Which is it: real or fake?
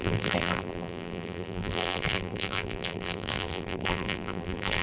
fake